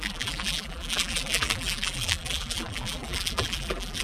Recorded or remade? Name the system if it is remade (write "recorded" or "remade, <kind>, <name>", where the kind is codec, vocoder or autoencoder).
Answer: remade, vocoder, BigVGAN v2